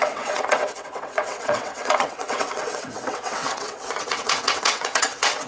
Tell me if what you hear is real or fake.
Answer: fake